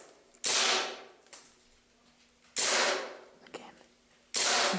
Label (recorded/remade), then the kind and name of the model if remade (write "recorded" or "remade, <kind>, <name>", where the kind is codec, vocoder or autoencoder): recorded